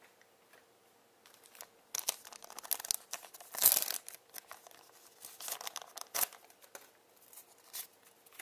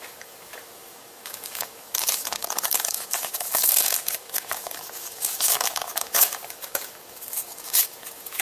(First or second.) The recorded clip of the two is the first